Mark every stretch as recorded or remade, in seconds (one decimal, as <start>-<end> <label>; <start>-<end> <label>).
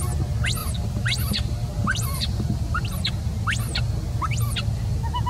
0.0-0.6 recorded; 0.6-2.9 remade; 2.9-5.3 recorded